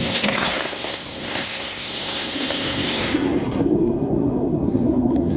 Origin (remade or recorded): remade